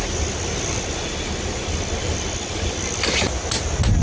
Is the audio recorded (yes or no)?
yes